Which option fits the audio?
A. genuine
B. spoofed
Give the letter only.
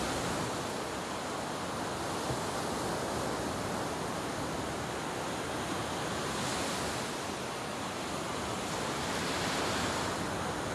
A